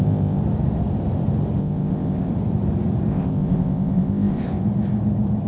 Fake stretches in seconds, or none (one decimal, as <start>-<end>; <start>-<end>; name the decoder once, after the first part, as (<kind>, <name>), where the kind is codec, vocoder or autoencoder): 0.0-0.4 (codec, ZipCodec); 1.6-2.3; 3.1-4.6